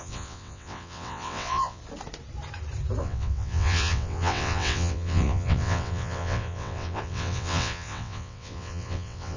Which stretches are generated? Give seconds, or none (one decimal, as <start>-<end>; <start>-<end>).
0.0-1.8; 3.0-9.4